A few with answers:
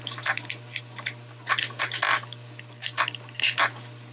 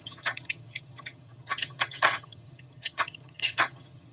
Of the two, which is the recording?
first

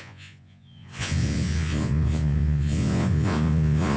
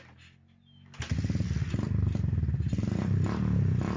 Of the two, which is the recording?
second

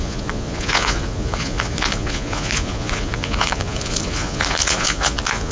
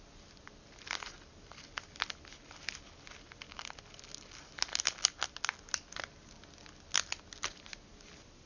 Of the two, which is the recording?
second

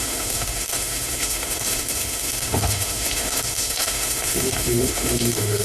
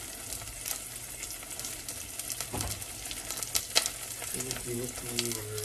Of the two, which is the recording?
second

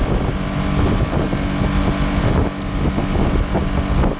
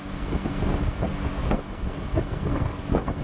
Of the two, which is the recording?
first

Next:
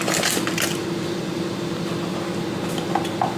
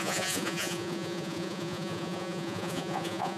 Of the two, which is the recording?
first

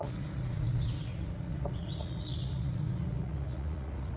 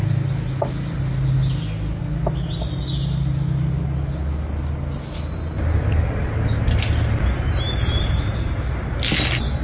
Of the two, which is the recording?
second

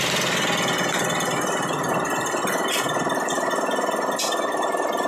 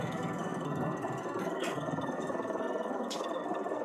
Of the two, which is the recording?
first